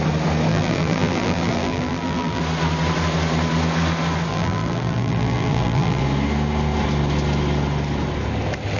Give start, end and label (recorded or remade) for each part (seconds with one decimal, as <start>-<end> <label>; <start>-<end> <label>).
0.0-0.5 recorded; 0.5-2.4 remade; 2.4-4.3 recorded; 4.3-6.0 remade; 6.0-8.8 recorded

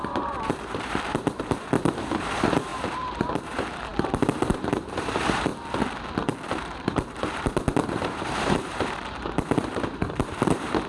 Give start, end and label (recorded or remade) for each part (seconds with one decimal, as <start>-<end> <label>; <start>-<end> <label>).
0.0-5.5 remade; 5.5-6.5 recorded; 6.5-10.9 remade

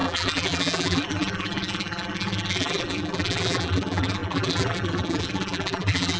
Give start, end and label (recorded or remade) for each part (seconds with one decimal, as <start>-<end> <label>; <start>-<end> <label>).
0.0-6.2 remade

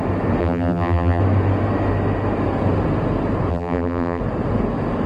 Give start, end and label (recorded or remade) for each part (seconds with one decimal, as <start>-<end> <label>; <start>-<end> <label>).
0.0-0.4 recorded; 0.4-1.2 remade; 1.2-3.5 recorded; 3.5-4.2 remade; 4.2-5.1 recorded

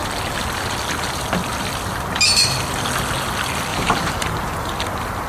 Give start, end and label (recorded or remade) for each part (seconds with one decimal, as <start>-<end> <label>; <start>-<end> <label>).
0.0-3.7 recorded; 3.7-4.7 remade; 4.7-5.3 recorded

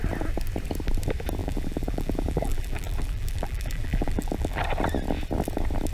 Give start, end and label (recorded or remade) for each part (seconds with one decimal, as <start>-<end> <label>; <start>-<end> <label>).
0.0-1.4 recorded; 1.4-4.6 remade; 4.6-5.9 recorded

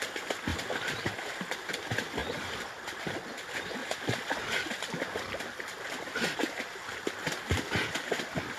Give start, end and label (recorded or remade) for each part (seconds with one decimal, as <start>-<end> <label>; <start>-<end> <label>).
0.0-0.5 recorded; 0.5-1.7 remade; 1.7-2.2 recorded; 2.2-2.8 remade; 2.8-8.6 recorded